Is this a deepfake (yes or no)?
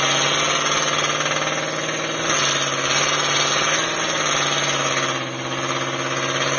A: no